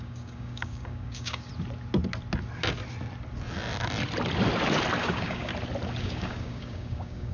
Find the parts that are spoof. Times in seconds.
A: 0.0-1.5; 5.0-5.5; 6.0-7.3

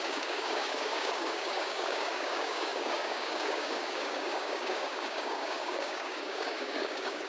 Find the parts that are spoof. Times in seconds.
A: 0.0-7.3